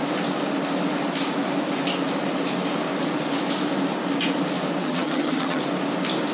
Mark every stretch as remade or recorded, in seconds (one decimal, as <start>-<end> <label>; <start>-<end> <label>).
0.0-4.8 recorded; 4.8-5.6 remade; 5.6-6.3 recorded